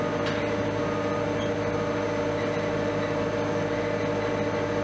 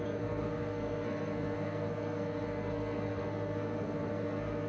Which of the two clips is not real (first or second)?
second